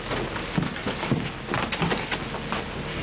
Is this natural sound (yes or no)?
yes